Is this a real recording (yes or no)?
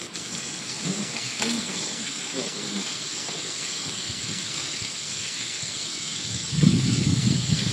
no